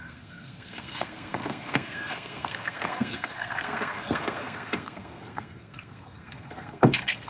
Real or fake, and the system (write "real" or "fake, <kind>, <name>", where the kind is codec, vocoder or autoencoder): fake, codec, SNAC